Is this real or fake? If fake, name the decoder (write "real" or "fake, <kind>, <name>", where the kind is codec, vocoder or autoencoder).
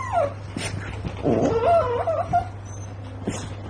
fake, vocoder, BigVGAN v2